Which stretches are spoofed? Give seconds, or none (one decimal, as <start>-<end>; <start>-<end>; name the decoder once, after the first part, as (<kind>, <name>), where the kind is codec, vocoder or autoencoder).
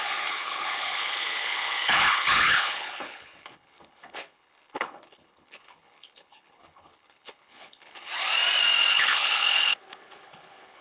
0.0-8.1 (codec, HILCodec); 8.9-10.8